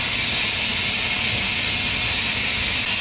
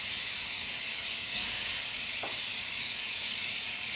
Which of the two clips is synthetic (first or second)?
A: second